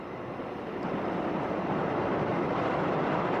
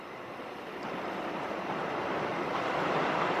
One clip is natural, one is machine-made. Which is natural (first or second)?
first